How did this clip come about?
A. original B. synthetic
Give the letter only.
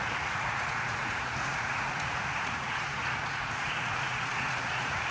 B